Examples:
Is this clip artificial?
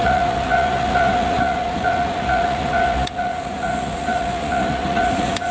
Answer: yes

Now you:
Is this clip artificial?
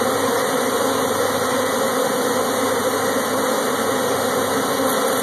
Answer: no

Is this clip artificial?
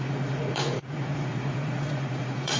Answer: yes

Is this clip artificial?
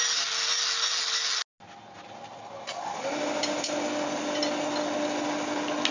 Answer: no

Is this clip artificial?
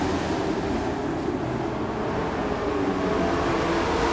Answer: no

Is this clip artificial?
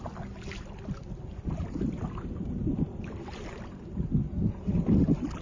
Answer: no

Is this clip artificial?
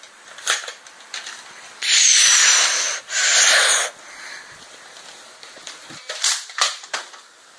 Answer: no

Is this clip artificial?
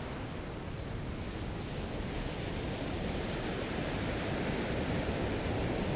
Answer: no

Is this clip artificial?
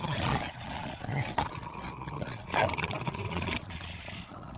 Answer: yes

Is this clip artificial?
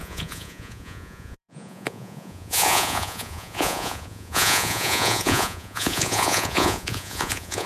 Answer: yes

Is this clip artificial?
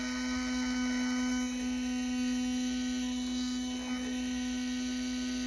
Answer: no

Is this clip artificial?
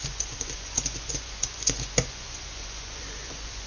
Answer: yes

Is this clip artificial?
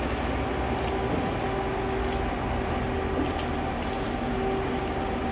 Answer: no